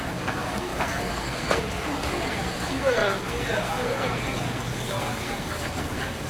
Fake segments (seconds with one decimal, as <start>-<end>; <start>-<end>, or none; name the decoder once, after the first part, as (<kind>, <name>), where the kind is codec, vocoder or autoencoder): 0.0-6.3 (codec, SNAC)